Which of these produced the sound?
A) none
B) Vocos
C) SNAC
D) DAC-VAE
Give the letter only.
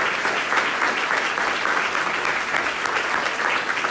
A